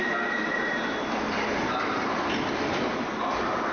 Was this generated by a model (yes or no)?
no